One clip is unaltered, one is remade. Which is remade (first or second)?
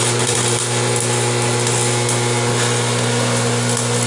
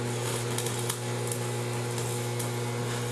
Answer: first